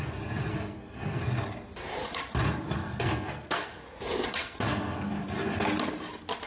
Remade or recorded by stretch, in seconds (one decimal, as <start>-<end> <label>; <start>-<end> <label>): 0.0-0.5 recorded; 0.5-1.2 remade; 1.2-2.8 recorded; 2.8-3.8 remade; 3.8-4.4 recorded; 4.4-5.1 remade; 5.1-6.5 recorded